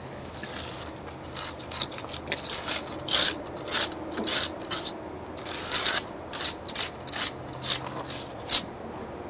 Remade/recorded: recorded